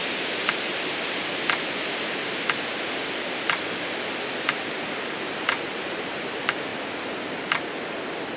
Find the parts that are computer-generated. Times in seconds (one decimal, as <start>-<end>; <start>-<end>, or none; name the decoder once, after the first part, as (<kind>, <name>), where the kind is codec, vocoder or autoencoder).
0.0-1.2 (vocoder, BigVGAN v2); 4.3-6.7